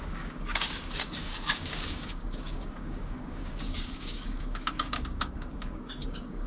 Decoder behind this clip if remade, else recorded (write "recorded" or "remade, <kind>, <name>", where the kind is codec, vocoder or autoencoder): remade, codec, DAC